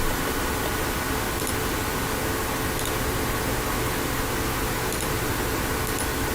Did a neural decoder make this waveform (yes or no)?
no